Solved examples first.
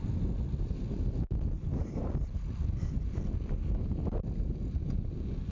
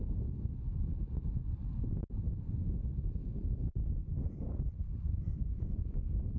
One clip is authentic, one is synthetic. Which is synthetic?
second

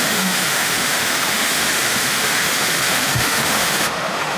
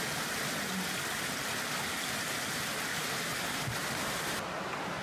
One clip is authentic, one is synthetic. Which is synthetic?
first